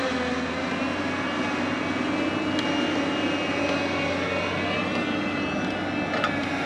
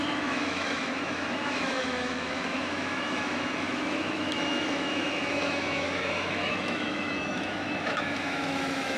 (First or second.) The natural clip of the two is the first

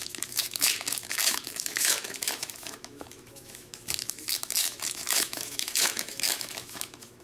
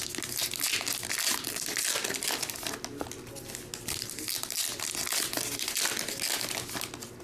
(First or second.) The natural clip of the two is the second